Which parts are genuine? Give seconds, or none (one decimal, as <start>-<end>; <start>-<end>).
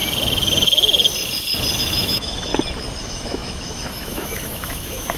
0.0-1.8; 2.5-3.0